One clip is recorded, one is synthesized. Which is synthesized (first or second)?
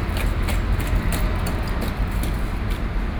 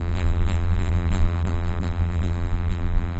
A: second